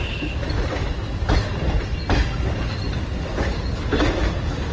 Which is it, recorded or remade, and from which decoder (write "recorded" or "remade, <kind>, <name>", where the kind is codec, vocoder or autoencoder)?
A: recorded